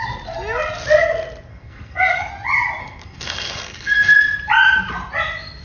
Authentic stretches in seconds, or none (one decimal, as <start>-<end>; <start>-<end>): 0.0-1.5; 2.3-2.8; 4.2-5.6